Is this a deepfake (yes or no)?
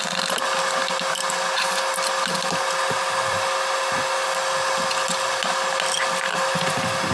no